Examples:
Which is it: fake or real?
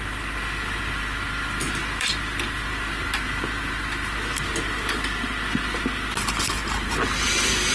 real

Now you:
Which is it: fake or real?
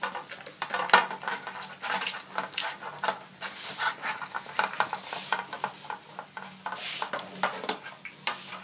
real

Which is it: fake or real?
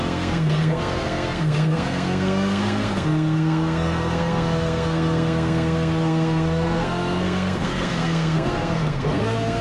fake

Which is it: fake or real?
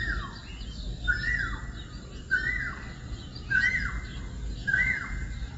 real